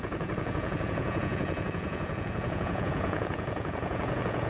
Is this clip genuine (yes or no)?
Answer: no